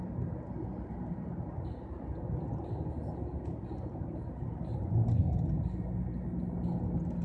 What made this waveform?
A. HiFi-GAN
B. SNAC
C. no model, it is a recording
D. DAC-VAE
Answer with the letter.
C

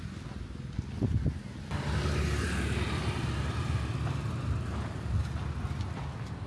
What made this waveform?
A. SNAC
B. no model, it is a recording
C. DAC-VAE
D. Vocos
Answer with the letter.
B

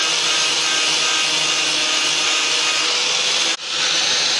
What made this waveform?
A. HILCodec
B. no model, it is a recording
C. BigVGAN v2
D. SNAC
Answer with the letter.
B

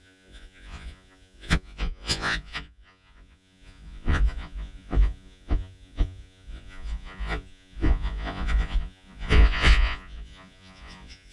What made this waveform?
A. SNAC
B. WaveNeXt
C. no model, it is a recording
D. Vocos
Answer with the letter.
D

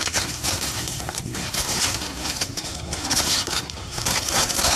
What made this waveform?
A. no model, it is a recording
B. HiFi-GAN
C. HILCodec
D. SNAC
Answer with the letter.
D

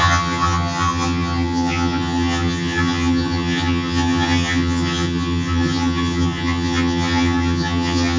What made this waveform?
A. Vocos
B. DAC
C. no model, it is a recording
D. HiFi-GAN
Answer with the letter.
D